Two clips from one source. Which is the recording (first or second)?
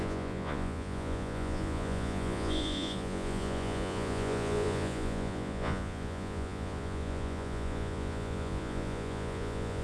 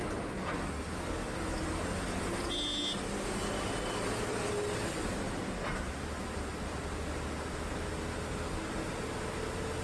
second